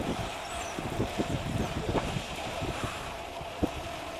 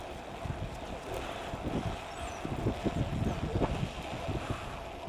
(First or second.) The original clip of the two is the second